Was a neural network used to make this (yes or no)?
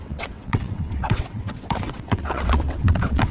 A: yes